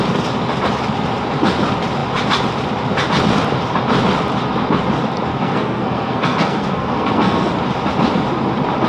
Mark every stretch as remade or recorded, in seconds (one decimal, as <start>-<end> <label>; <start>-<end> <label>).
0.0-5.3 recorded; 5.3-7.5 remade; 7.5-8.9 recorded

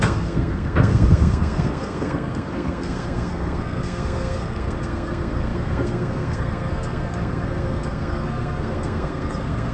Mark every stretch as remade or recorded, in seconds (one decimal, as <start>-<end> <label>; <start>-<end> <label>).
0.0-9.7 remade

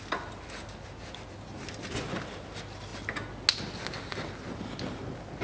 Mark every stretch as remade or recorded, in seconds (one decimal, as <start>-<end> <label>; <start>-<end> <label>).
0.0-5.4 recorded

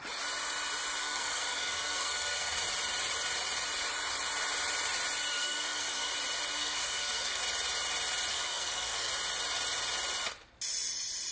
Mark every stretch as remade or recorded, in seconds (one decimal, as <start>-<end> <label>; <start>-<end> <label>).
0.0-1.0 recorded; 1.0-2.6 remade; 2.6-5.4 recorded; 5.4-6.1 remade; 6.1-6.6 recorded; 6.6-7.4 remade; 7.4-8.3 recorded; 8.3-9.1 remade; 9.1-11.3 recorded